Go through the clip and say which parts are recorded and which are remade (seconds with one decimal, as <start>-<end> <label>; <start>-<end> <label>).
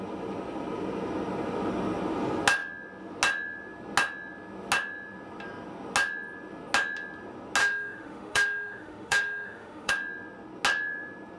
0.0-7.6 recorded; 7.6-9.9 remade; 9.9-11.4 recorded